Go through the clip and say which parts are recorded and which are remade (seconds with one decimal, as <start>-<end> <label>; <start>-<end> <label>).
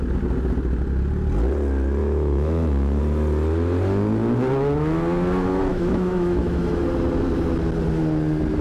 0.0-2.0 recorded; 2.0-3.0 remade; 3.0-5.7 recorded; 5.7-6.6 remade; 6.6-8.6 recorded